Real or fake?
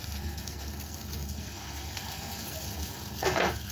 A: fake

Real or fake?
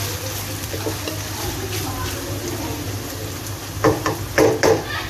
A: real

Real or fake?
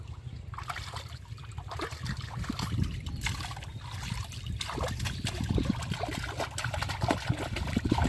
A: real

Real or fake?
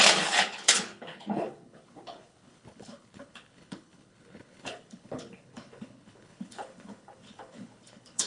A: fake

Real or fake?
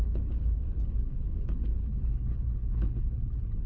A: fake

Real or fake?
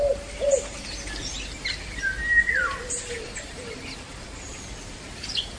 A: real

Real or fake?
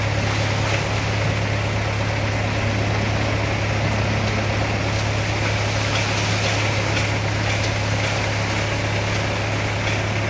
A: real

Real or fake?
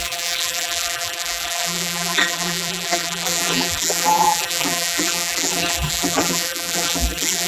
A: fake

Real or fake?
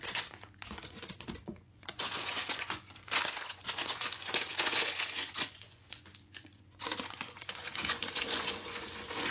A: fake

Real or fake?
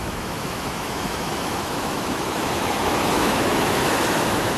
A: fake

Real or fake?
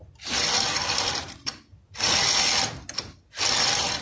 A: real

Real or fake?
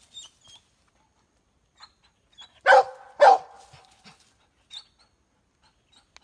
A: real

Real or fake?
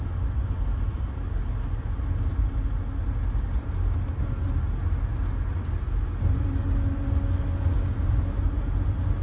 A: real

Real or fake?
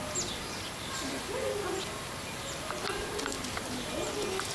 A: real